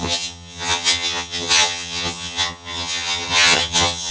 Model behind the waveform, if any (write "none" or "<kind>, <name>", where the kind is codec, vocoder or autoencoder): vocoder, HiFi-GAN